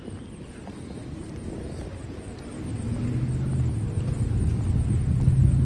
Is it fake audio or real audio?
real